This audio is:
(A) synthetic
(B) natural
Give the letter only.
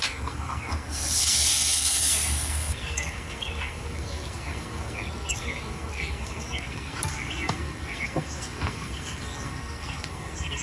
A